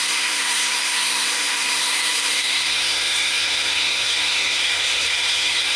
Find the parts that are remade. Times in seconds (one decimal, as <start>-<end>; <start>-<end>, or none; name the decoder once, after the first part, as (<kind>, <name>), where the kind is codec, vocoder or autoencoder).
0.0-5.8 (codec, SNAC)